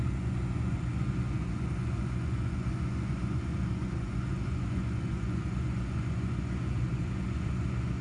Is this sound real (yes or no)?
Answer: no